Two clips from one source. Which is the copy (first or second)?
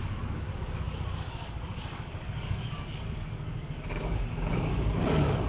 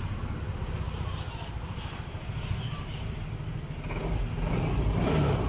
first